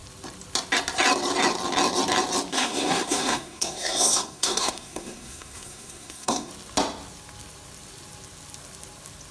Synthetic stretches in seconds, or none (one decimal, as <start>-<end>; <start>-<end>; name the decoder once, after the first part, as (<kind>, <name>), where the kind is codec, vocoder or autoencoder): 2.5-6.5 (codec, SNAC)